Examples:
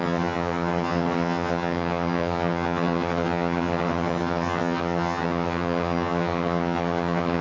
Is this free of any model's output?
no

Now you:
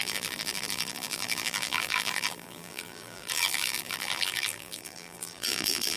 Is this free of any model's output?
no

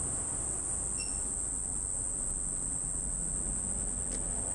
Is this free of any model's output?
yes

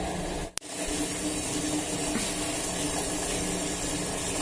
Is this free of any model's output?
yes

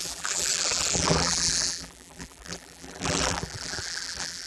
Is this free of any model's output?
no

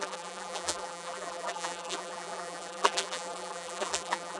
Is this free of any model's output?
no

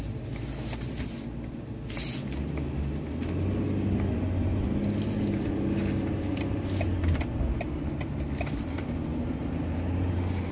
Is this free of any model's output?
yes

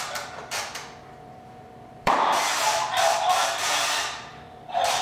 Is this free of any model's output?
no